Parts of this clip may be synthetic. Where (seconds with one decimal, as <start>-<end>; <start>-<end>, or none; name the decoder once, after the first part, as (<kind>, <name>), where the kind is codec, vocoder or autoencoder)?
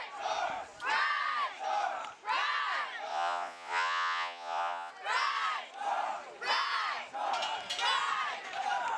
3.1-4.9 (vocoder, Vocos)